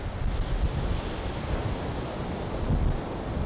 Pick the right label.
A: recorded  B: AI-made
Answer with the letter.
A